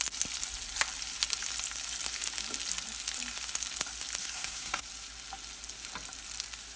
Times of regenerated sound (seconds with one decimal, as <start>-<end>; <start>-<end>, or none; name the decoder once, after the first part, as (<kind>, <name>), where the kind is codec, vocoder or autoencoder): 4.2-4.8 (codec, SNAC)